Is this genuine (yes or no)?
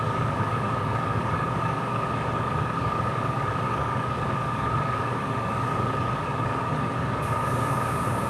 no